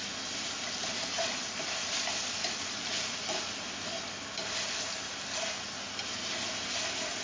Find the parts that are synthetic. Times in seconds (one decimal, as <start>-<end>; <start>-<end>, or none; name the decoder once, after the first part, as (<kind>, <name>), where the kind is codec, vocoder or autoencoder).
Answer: none